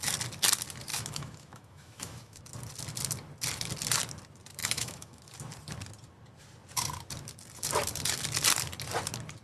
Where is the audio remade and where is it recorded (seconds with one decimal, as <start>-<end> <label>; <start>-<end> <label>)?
0.0-0.9 recorded; 0.9-2.4 remade; 2.4-4.6 recorded; 4.6-5.2 remade; 5.2-9.4 recorded